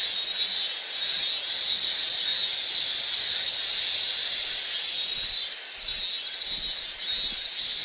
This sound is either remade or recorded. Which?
recorded